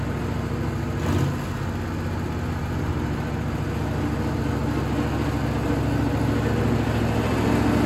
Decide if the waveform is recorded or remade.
recorded